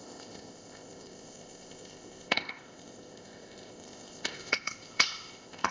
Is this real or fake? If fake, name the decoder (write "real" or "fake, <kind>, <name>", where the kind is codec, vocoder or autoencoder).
fake, codec, ZipCodec